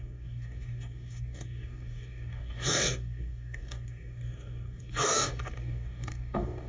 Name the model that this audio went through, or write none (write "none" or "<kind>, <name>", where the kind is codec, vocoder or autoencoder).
codec, DAC